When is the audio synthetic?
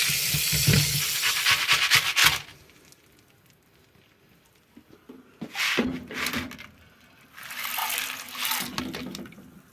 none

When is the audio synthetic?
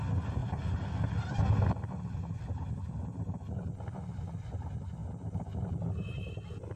0.4-1.4 (vocoder, BigVGAN v2)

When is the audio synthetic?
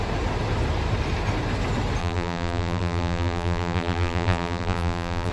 2.0-5.3 (vocoder, BigVGAN v2)